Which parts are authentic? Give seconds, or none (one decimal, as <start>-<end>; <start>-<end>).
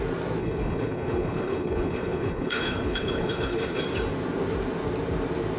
0.0-0.4; 3.8-5.6